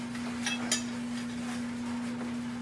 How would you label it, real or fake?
real